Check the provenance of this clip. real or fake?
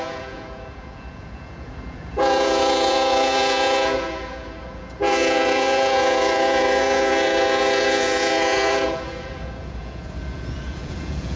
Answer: fake